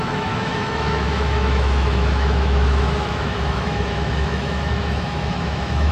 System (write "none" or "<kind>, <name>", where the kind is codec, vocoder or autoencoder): autoencoder, DAC-VAE